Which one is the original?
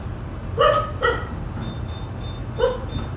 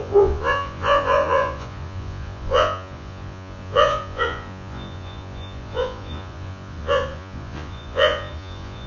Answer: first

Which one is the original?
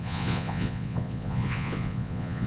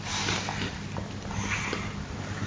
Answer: second